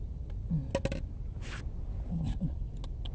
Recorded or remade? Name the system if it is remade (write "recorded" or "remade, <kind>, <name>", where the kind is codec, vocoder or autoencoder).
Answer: recorded